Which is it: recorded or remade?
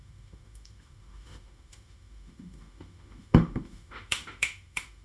remade